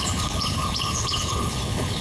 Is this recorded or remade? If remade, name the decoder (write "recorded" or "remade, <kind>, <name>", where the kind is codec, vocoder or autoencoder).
remade, codec, HILCodec